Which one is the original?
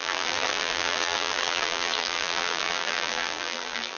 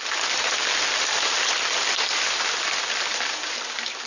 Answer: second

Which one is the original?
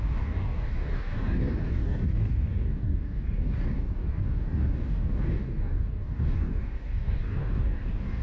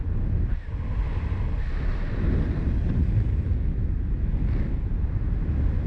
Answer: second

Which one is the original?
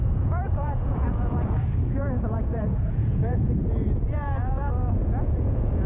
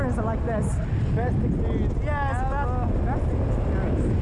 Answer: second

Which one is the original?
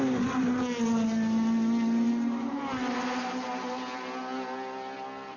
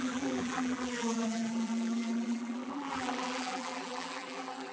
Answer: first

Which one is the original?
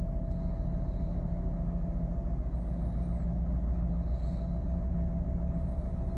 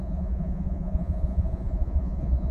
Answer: first